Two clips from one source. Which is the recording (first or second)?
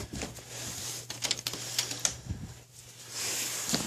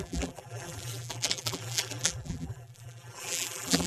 first